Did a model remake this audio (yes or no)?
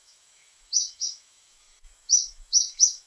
yes